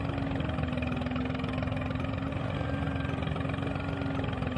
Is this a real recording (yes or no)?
yes